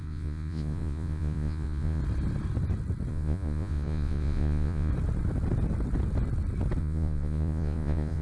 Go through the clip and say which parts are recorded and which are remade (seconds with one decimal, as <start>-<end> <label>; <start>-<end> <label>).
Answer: 0.0-2.0 remade; 2.0-3.1 recorded; 3.1-4.9 remade; 4.9-6.8 recorded; 6.8-8.2 remade